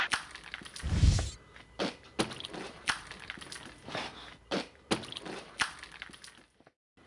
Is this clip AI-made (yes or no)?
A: no